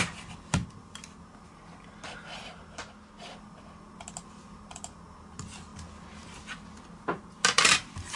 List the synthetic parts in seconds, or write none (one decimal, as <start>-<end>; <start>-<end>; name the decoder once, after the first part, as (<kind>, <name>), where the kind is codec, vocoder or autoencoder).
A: none